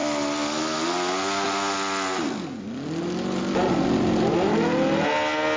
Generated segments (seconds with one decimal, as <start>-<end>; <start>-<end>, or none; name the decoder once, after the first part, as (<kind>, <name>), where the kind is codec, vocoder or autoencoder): none